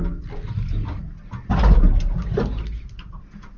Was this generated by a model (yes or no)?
no